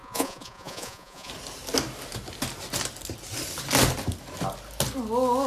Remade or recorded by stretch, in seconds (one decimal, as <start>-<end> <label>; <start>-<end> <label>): 0.0-1.3 remade; 1.3-5.5 recorded